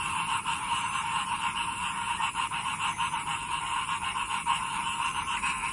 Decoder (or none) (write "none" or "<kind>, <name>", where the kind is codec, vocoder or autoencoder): vocoder, BigVGAN v2